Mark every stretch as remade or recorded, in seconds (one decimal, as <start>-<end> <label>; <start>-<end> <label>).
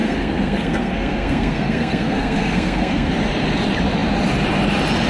0.0-3.1 remade; 3.1-5.1 recorded